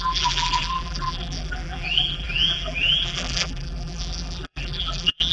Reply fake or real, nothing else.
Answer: fake